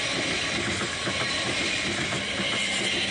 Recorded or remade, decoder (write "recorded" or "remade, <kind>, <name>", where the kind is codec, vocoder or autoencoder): recorded